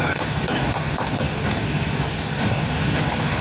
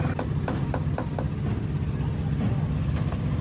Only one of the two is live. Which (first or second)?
second